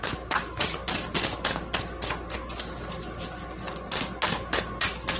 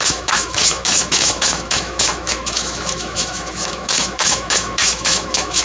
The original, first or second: first